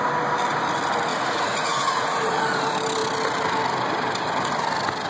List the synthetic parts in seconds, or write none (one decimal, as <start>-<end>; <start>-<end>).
1.1-2.4